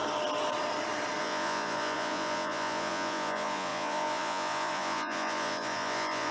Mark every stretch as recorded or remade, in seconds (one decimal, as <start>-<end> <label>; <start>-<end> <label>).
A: 0.0-1.2 recorded; 1.2-6.3 remade